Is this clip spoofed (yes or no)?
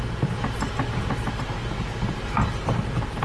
no